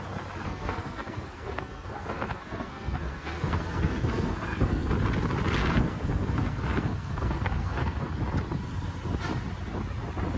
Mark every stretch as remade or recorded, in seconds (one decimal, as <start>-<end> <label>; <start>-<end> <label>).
0.0-0.4 recorded; 0.4-4.9 remade; 4.9-5.6 recorded; 5.6-8.1 remade; 8.1-10.4 recorded

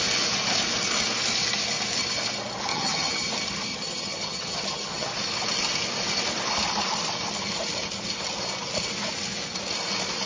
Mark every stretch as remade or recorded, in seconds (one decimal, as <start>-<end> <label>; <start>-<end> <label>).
0.0-2.7 recorded; 2.7-3.3 remade; 3.3-3.7 recorded; 3.7-5.1 remade; 5.1-10.3 recorded

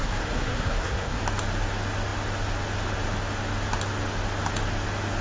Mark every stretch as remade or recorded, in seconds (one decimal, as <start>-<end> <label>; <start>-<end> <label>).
0.0-1.2 remade; 1.2-5.2 recorded

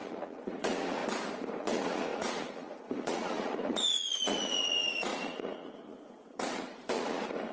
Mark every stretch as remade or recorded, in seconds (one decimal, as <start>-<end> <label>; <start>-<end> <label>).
0.0-1.0 remade; 1.0-1.6 recorded; 1.6-7.5 remade

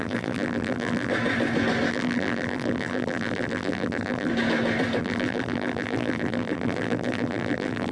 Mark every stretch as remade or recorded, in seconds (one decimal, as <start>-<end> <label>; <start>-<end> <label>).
0.0-1.1 remade; 1.1-1.9 recorded; 1.9-4.3 remade; 4.3-5.0 recorded; 5.0-7.9 remade

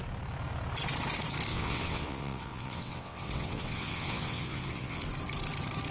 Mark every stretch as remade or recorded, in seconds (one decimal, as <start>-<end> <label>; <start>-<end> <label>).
0.0-1.5 recorded; 1.5-5.0 remade; 5.0-5.9 recorded